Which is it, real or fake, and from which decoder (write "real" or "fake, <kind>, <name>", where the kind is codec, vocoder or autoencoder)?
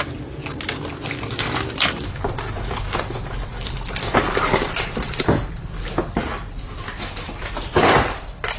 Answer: real